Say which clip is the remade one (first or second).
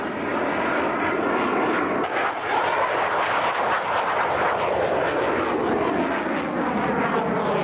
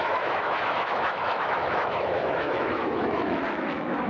second